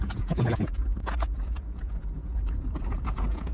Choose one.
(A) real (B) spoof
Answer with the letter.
B